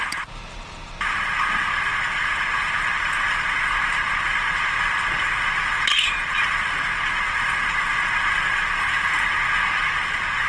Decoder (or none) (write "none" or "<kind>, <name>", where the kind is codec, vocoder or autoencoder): none